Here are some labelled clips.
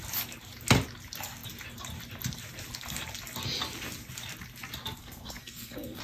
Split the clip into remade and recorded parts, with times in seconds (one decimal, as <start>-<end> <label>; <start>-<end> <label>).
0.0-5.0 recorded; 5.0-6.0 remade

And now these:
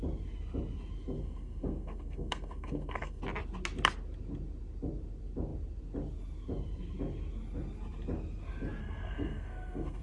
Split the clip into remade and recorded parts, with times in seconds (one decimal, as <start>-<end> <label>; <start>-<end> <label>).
0.0-1.2 recorded; 1.2-3.2 remade; 3.2-8.8 recorded; 8.8-10.0 remade

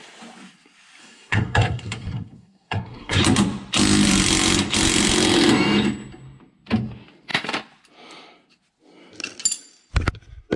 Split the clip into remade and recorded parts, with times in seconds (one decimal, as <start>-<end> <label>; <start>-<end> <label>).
0.0-1.0 recorded; 1.0-3.2 remade; 3.2-10.6 recorded

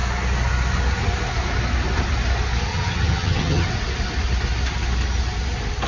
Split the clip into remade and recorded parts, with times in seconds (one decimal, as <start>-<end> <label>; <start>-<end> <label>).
0.0-2.7 recorded; 2.7-3.7 remade; 3.7-5.9 recorded